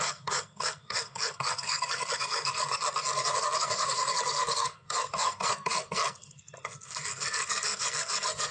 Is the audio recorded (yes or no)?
no